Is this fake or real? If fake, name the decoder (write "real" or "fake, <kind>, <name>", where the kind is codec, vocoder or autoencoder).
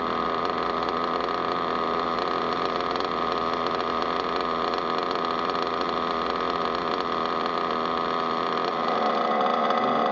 real